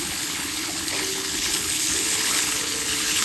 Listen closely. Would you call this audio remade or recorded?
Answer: remade